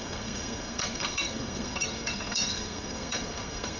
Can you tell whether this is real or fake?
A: fake